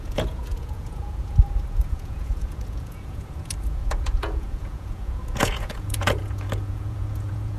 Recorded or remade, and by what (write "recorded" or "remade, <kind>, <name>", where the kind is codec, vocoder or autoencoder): remade, vocoder, Vocos